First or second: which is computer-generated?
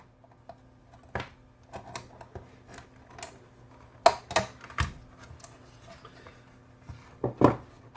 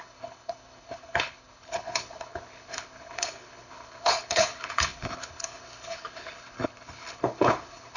second